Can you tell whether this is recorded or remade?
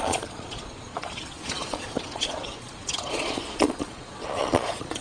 remade